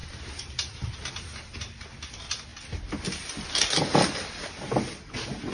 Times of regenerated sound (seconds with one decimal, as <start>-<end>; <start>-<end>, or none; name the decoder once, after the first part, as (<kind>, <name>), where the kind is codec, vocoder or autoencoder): 0.0-1.1 (vocoder, BigVGAN v2)